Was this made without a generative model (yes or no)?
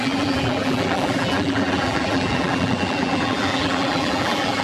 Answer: no